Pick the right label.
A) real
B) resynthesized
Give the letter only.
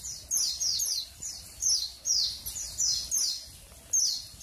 A